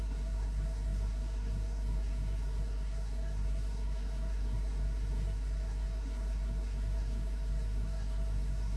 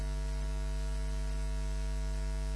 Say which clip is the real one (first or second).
second